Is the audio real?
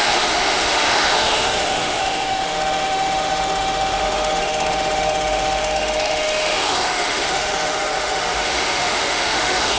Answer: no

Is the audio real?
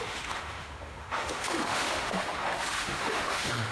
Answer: no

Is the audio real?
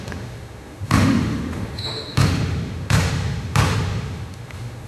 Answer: no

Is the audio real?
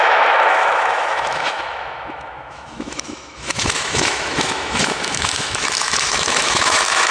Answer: no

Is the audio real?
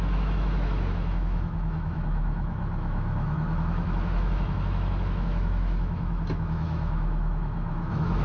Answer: no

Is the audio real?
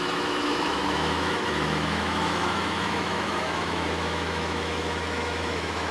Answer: no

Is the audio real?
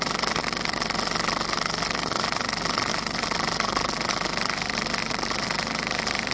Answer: yes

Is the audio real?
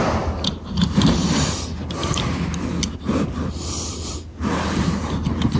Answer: yes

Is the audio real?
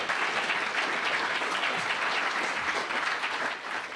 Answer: yes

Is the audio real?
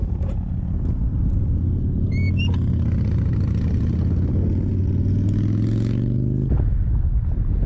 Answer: yes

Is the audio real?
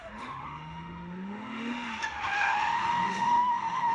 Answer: no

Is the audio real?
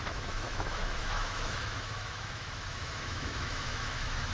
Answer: no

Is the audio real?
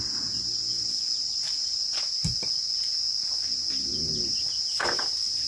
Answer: yes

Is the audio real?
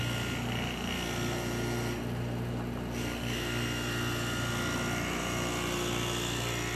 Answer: yes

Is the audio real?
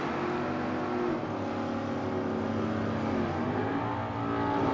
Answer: yes